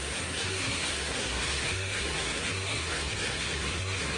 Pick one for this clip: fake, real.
fake